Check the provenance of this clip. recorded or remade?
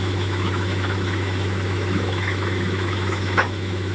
remade